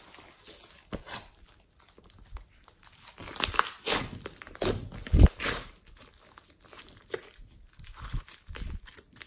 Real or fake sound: real